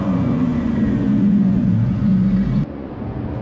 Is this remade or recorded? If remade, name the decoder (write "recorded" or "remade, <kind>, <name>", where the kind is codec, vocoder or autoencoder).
remade, vocoder, Vocos